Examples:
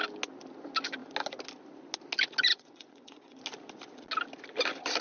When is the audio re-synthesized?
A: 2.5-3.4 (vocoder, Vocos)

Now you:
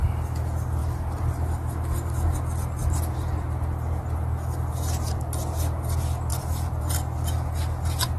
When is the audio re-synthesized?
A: 6.3-6.8 (vocoder, BigVGAN v2)

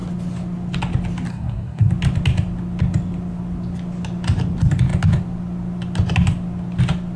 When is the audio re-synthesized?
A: 1.3-1.9 (codec, SNAC)

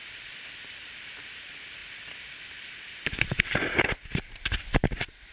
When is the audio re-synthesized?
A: 0.0-1.1 (vocoder, BigVGAN v2); 1.8-5.3

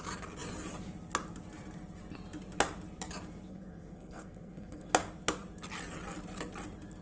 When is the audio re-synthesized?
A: 3.5-4.9 (codec, SNAC)

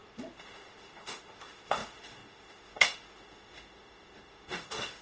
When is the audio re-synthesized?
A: 0.0-5.0 (autoencoder, DAC-VAE)

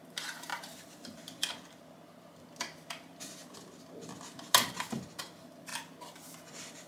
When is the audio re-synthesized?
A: 0.0-3.4 (vocoder, BigVGAN v2); 5.2-5.7; 6.5-6.9